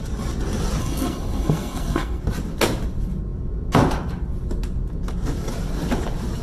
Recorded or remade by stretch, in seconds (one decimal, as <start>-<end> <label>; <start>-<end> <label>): 0.0-0.8 recorded; 0.8-2.2 remade; 2.2-6.4 recorded